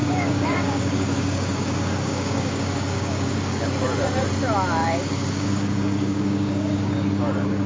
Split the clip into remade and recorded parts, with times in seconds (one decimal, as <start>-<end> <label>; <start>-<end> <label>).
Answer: 0.0-3.6 remade; 3.6-4.8 recorded; 4.8-7.7 remade